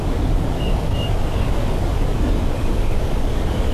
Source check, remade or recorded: remade